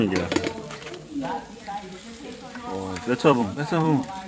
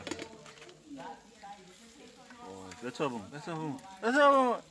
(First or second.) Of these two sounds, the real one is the second